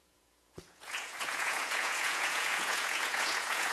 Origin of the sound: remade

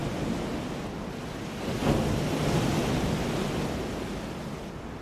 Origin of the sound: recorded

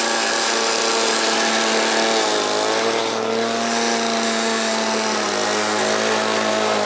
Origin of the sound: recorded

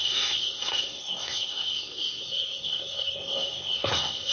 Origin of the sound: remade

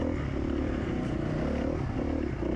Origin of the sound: recorded